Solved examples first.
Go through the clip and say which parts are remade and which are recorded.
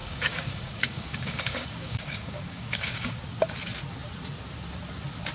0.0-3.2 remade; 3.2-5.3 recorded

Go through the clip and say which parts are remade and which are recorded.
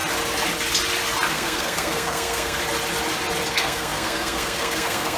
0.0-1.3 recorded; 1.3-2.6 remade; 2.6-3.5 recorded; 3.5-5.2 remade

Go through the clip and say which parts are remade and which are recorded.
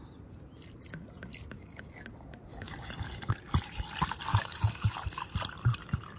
0.0-1.3 recorded; 1.3-1.9 remade; 1.9-2.5 recorded; 2.5-3.3 remade; 3.3-4.3 recorded; 4.3-4.9 remade; 4.9-6.2 recorded